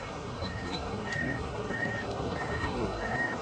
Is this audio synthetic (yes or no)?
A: yes